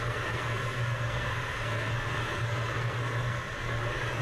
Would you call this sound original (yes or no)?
no